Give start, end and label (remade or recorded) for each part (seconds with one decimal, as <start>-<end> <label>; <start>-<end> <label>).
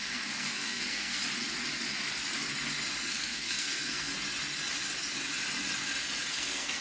0.0-1.2 remade; 1.2-3.1 recorded; 3.1-4.1 remade; 4.1-6.3 recorded; 6.3-6.8 remade